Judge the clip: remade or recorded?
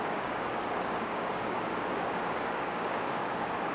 remade